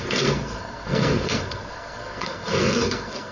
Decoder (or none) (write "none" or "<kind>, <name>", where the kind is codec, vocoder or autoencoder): codec, SNAC